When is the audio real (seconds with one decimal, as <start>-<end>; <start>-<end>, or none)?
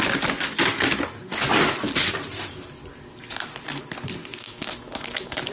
0.0-4.2